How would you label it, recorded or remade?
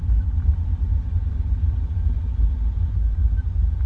recorded